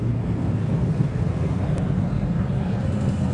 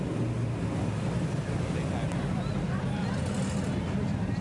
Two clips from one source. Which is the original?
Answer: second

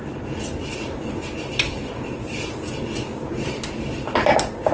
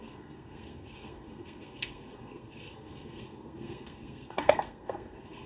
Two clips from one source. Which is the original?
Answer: first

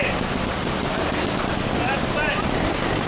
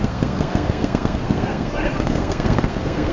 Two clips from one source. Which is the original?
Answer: first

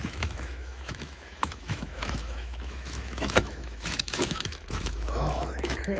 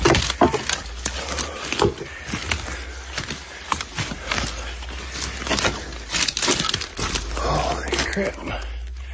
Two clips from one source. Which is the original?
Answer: second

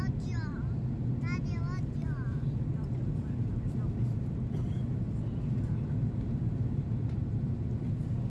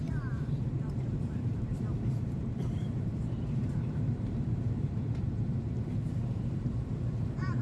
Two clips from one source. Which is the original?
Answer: first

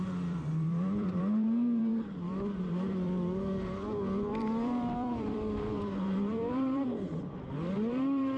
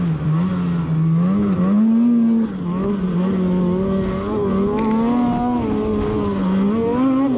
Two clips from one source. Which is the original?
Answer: second